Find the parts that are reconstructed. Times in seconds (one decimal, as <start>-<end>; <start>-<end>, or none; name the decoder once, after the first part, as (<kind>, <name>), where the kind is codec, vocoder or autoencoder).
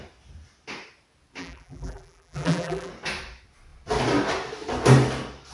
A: 1.4-2.9 (vocoder, BigVGAN v2)